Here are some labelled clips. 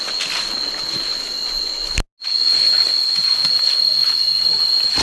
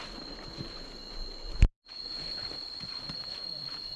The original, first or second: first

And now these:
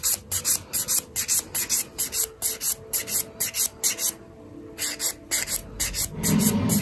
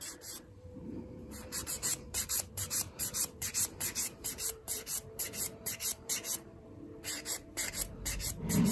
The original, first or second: first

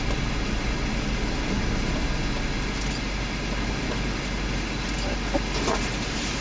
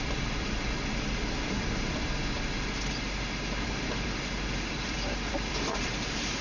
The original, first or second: first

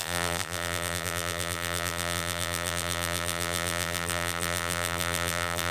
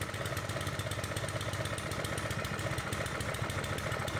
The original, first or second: second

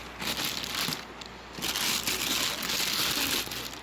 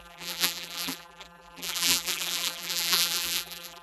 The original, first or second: first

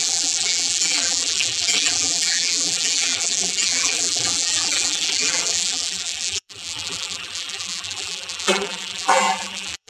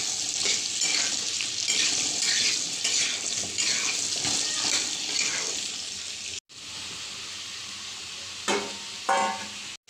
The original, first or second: second